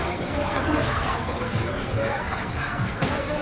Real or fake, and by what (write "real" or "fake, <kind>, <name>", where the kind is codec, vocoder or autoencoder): fake, codec, SNAC